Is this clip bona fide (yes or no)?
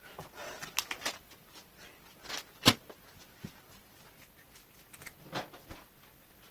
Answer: yes